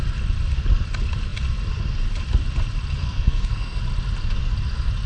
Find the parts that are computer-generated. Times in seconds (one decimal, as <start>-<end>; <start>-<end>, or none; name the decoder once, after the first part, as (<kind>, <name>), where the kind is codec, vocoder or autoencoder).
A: 3.0-3.8 (codec, SNAC)